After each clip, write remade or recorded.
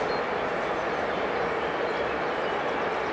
recorded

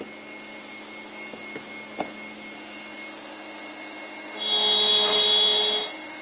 recorded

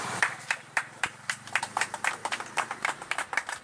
remade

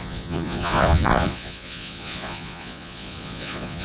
remade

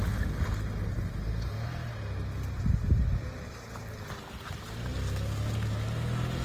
recorded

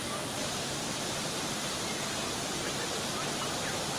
recorded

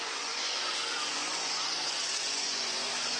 remade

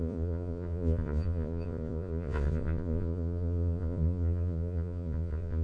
remade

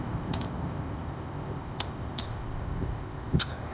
remade